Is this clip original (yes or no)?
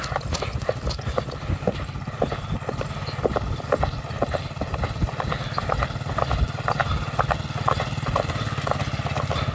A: yes